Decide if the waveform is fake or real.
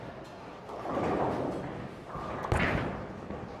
real